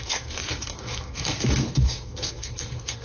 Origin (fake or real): fake